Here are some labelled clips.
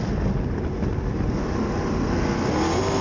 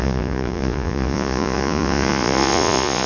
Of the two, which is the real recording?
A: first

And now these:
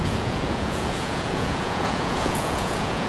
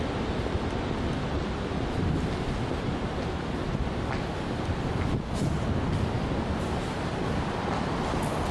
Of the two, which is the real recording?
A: second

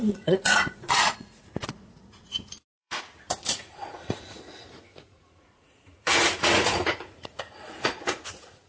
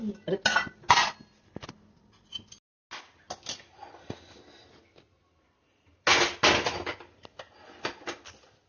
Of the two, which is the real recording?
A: second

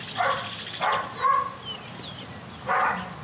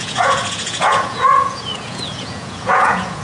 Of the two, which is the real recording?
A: first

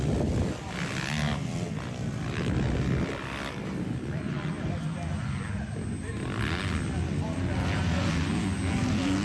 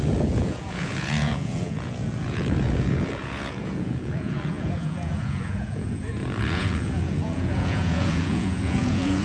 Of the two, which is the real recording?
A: first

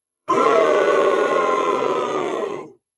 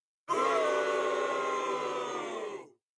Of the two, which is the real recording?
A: second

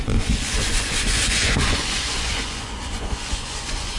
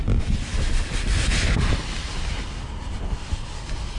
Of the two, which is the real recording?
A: second